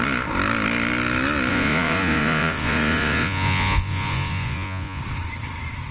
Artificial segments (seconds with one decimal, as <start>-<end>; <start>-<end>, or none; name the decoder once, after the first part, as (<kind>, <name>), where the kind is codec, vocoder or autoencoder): 1.5-5.0 (vocoder, Vocos)